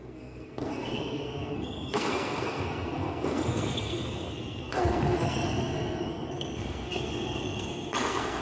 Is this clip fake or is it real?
fake